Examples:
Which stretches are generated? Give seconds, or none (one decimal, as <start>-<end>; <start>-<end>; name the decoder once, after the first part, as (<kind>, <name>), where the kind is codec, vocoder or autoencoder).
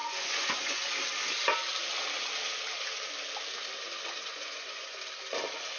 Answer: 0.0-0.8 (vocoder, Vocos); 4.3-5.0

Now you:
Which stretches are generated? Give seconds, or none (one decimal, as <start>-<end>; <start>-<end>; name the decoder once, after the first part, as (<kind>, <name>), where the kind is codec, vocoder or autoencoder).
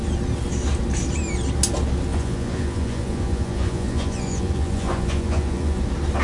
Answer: 2.1-5.8 (vocoder, Vocos)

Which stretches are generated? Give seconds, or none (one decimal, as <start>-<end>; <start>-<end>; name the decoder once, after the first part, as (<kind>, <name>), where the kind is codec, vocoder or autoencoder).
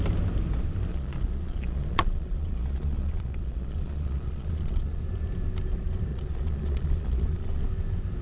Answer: 0.9-5.0 (vocoder, Vocos); 6.1-7.6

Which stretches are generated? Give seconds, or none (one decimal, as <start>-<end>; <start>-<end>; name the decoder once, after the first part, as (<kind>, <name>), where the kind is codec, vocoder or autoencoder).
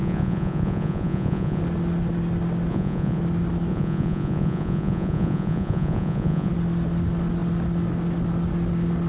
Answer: 0.0-1.6 (vocoder, Vocos); 2.7-3.2; 3.7-6.5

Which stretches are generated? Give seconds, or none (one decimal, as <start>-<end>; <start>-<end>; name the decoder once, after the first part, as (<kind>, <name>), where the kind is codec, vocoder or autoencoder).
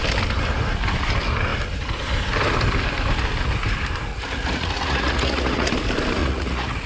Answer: 4.1-5.7 (vocoder, Vocos); 6.2-6.9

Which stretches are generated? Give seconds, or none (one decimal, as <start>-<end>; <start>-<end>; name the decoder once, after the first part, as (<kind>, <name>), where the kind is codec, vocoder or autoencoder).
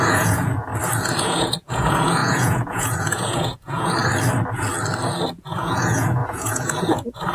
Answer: 0.0-0.7 (vocoder, Vocos); 1.2-4.0; 5.3-7.3